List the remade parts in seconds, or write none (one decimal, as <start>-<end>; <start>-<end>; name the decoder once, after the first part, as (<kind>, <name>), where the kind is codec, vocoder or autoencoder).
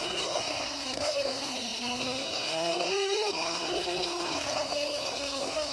0.0-5.7 (codec, SNAC)